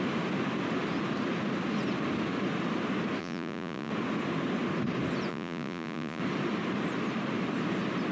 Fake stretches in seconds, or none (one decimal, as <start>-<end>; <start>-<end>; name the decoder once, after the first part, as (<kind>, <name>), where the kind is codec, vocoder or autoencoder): 3.2-3.9 (vocoder, Vocos); 5.3-6.2